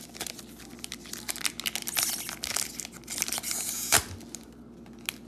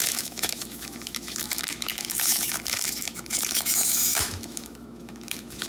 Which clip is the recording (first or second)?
first